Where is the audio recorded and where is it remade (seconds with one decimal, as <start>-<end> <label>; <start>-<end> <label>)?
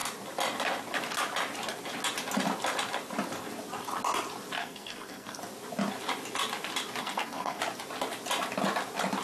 0.0-4.6 recorded; 4.6-5.4 remade; 5.4-7.0 recorded; 7.0-7.6 remade; 7.6-9.2 recorded